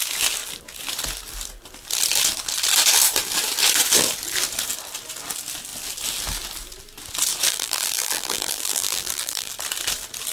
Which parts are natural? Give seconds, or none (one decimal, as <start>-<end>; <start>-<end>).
0.0-7.5; 9.5-10.3